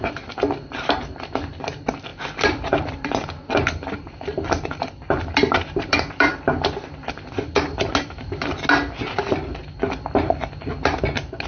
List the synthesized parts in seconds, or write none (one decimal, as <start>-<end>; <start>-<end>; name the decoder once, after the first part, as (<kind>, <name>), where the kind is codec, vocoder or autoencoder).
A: 2.1-6.4 (vocoder, BigVGAN v2)